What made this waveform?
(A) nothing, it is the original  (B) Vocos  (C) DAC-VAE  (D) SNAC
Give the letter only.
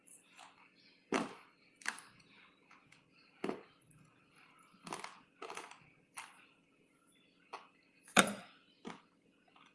A